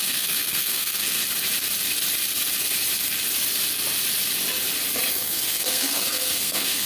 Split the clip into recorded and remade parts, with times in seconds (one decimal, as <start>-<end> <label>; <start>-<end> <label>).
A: 0.0-1.2 remade; 1.2-5.1 recorded; 5.1-6.9 remade